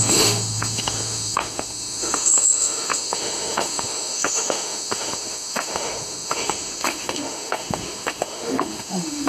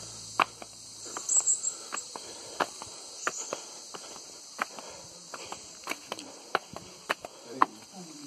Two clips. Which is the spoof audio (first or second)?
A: first